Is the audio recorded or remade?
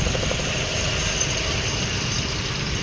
recorded